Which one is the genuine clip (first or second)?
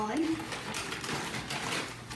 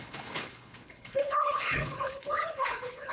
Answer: first